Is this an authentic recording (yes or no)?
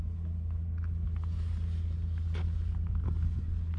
yes